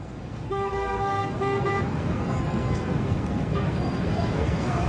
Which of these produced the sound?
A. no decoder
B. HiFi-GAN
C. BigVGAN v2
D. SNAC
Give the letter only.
D